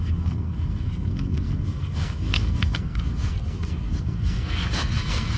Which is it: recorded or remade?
remade